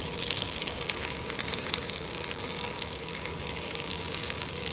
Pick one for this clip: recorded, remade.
remade